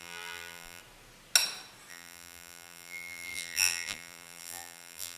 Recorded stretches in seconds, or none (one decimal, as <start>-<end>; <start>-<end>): 0.8-1.9